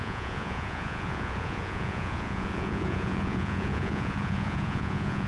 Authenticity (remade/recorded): remade